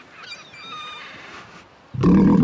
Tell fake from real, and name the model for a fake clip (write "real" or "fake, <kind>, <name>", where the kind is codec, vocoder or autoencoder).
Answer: real